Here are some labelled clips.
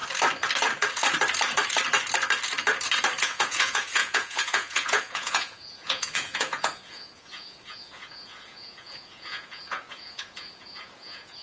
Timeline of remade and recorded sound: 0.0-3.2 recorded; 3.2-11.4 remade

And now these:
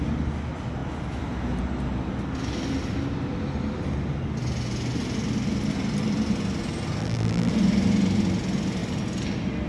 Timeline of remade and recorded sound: 0.0-7.0 recorded; 7.0-7.5 remade; 7.5-9.7 recorded

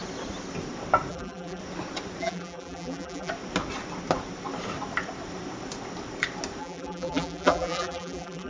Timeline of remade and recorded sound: 0.0-1.1 recorded; 1.1-1.6 remade; 1.6-2.2 recorded; 2.2-3.3 remade; 3.3-6.6 recorded; 6.6-8.5 remade

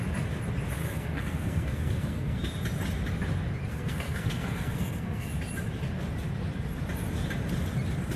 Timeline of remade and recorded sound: 0.0-0.8 recorded; 0.8-2.4 remade; 2.4-3.7 recorded; 3.7-5.3 remade; 5.3-8.2 recorded

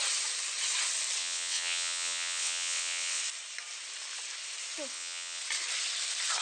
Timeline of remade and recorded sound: 0.0-1.2 recorded; 1.2-3.2 remade; 3.2-4.9 recorded; 4.9-5.4 remade; 5.4-6.4 recorded

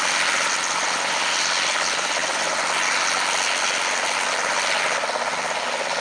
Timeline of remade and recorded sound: 0.0-6.0 recorded